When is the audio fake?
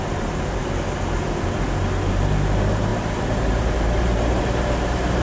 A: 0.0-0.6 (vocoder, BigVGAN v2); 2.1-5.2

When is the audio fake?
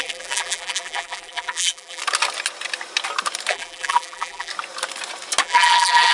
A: 0.0-2.0 (vocoder, BigVGAN v2); 3.5-4.5; 5.4-6.1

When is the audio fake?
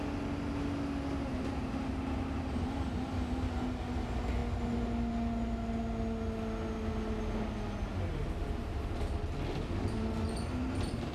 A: none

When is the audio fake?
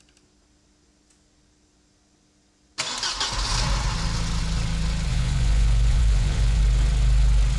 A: 5.1-6.6 (vocoder, Vocos)